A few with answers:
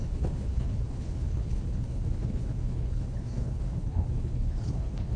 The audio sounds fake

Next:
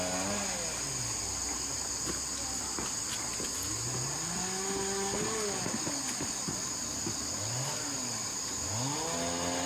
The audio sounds real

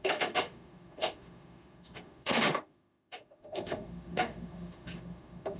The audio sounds fake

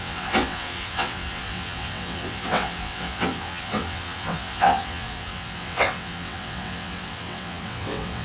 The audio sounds fake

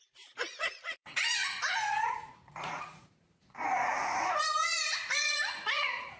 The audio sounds fake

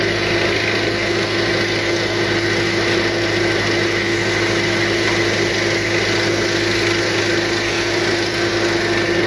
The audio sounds real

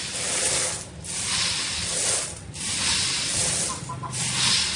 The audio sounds real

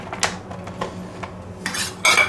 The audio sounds real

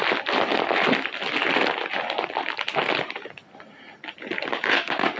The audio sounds real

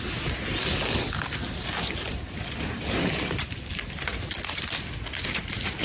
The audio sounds real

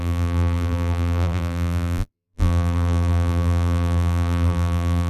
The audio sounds fake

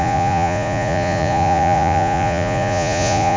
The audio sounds fake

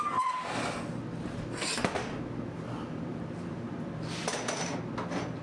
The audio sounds real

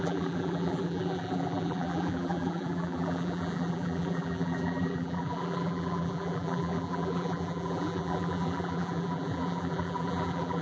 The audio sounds fake